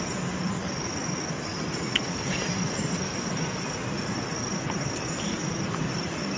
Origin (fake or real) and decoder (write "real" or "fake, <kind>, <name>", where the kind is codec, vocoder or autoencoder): real